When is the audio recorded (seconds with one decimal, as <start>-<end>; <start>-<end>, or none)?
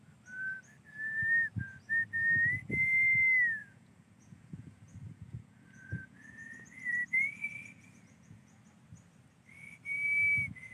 0.0-3.6; 8.6-10.7